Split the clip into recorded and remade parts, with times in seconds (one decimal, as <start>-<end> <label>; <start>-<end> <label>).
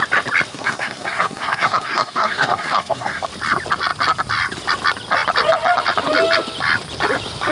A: 0.0-0.5 recorded; 0.5-3.3 remade; 3.3-7.5 recorded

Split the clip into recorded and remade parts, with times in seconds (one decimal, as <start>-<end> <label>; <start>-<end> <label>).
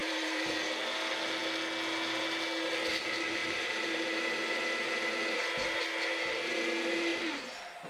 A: 0.0-0.5 remade; 0.5-3.4 recorded; 3.4-4.2 remade; 4.2-7.9 recorded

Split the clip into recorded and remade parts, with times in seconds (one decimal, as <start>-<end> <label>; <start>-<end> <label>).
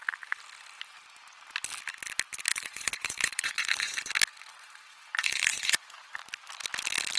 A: 0.0-2.5 recorded; 2.5-4.1 remade; 4.1-4.5 recorded; 4.5-6.1 remade; 6.1-7.2 recorded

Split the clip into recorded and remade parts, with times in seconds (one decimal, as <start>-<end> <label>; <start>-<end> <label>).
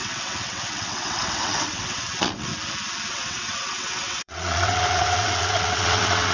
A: 0.0-2.5 remade; 2.5-3.1 recorded; 3.1-6.3 remade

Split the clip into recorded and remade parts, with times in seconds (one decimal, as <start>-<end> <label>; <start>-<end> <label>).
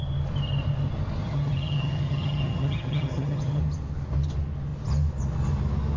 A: 0.0-1.2 recorded; 1.2-3.6 remade; 3.6-6.0 recorded